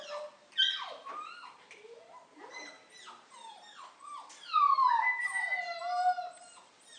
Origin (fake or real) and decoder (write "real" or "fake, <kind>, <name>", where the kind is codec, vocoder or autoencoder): real